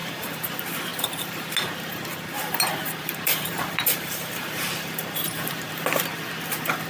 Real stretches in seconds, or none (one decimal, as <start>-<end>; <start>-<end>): 0.5-2.7; 5.7-6.9